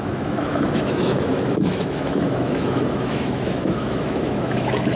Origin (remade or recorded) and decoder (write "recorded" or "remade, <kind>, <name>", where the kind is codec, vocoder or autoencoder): remade, autoencoder, DAC-VAE